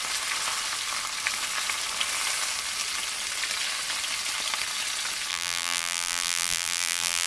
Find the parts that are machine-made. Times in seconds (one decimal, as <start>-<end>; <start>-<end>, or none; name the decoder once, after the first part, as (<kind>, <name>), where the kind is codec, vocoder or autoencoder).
5.3-7.3 (vocoder, BigVGAN v2)